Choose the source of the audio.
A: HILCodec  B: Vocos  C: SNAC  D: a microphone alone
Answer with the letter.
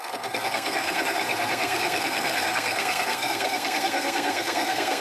C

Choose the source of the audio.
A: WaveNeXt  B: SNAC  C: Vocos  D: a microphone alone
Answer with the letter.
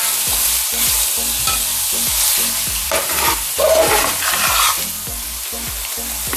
D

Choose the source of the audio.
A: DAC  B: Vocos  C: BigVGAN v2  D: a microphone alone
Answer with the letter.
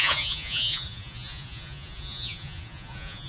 B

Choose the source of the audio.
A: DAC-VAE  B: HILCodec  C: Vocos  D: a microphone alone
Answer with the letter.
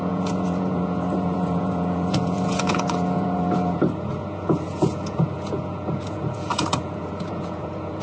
C